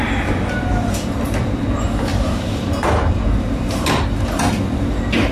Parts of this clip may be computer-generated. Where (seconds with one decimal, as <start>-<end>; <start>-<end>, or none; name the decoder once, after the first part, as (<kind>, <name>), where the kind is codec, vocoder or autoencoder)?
2.1-4.0 (vocoder, BigVGAN v2)